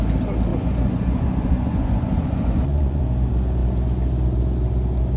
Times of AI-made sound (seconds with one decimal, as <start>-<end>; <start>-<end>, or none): 0.5-3.0